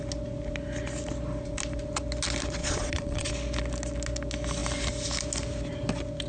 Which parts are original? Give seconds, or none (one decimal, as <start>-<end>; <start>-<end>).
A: 0.0-2.6; 3.3-6.3